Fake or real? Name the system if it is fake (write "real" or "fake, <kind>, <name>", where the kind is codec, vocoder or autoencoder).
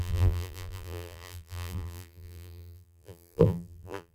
fake, vocoder, BigVGAN v2